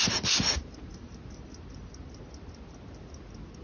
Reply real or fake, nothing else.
real